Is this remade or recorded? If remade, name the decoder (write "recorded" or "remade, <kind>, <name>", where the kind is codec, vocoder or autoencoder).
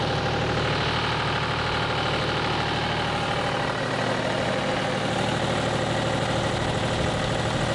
recorded